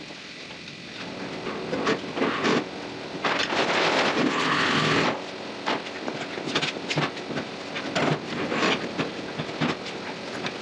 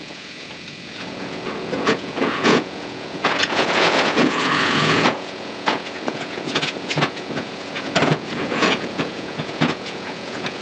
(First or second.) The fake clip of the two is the second